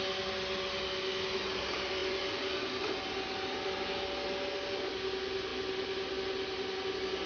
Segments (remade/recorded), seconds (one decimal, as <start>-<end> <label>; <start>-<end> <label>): 0.0-7.3 recorded